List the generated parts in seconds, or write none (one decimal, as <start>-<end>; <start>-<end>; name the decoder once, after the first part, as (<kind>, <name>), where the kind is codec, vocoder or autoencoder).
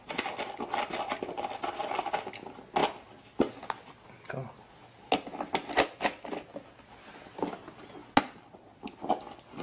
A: none